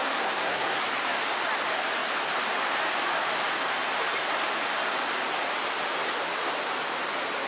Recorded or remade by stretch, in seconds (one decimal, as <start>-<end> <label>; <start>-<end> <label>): 0.0-0.8 remade; 0.8-7.5 recorded

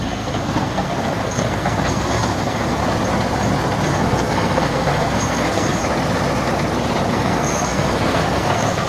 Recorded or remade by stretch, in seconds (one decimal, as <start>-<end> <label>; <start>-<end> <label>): 0.0-2.8 remade; 2.8-3.9 recorded; 3.9-5.8 remade; 5.8-7.1 recorded; 7.1-8.9 remade

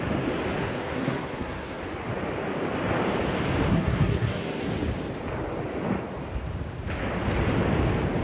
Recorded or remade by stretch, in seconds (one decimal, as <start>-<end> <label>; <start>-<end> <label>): 0.0-0.6 recorded; 0.6-1.8 remade; 1.8-3.7 recorded; 3.7-4.7 remade; 4.7-8.2 recorded